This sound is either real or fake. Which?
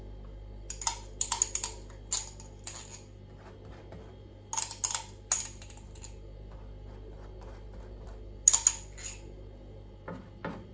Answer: real